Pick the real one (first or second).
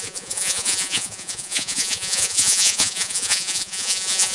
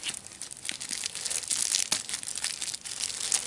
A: second